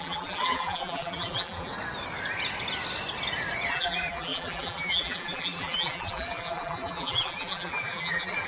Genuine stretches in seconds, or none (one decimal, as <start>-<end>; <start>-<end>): 1.7-3.7